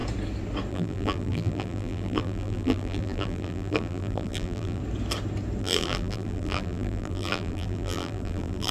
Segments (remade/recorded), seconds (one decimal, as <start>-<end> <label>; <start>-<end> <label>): 0.0-0.7 recorded; 0.7-4.8 remade; 4.8-5.6 recorded; 5.6-8.7 remade